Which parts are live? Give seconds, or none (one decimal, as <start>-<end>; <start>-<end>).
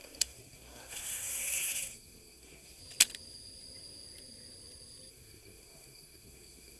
2.8-5.1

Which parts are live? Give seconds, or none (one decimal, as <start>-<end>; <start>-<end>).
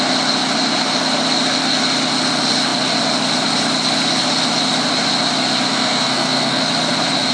0.0-5.7; 6.6-7.3